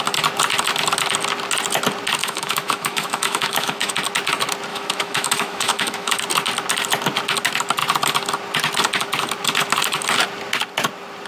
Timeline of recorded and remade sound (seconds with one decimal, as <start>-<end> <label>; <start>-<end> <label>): 0.0-2.2 recorded; 2.2-3.9 remade; 3.9-4.7 recorded; 4.7-6.2 remade; 6.2-11.3 recorded